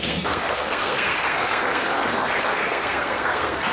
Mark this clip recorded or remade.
remade